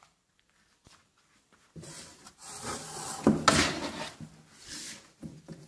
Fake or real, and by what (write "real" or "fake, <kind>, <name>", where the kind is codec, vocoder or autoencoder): real